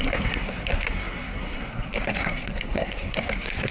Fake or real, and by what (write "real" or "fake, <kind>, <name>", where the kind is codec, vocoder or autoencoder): fake, codec, SNAC